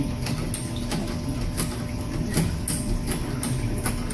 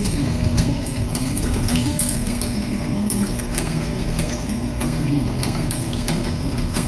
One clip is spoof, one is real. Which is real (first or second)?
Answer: first